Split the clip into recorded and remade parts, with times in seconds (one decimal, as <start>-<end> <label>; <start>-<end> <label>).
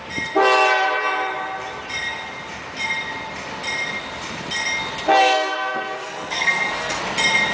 0.0-5.2 recorded; 5.2-7.0 remade; 7.0-7.5 recorded